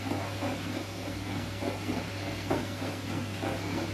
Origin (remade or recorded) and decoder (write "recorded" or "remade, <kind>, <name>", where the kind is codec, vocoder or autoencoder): remade, codec, SNAC